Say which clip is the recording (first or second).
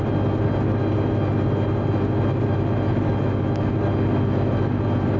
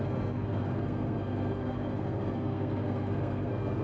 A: first